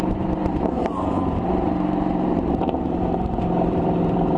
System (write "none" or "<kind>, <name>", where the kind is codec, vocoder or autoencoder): vocoder, BigVGAN v2